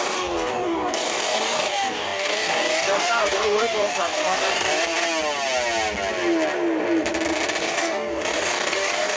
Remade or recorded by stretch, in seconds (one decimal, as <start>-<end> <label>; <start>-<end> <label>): 0.0-4.7 remade; 4.7-7.6 recorded; 7.6-9.2 remade